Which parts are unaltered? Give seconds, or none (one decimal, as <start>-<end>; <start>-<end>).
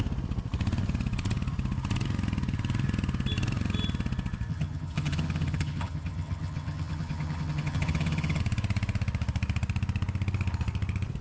0.0-4.5; 8.4-11.2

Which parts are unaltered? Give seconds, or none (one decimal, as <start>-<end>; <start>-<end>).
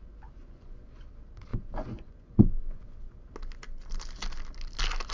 0.0-0.4; 1.0-1.5; 3.0-5.1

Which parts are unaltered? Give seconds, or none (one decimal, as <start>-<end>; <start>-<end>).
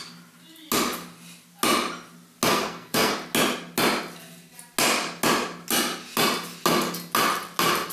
0.0-2.5; 3.1-7.9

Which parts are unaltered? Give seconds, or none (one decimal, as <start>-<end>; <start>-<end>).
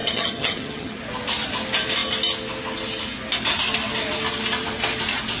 1.0-5.4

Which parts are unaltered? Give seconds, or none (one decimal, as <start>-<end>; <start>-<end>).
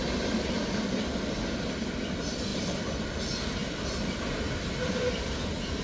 0.0-2.5; 3.2-5.8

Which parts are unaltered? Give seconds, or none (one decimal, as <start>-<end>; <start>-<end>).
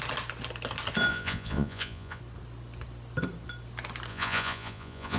0.0-1.1; 2.2-4.1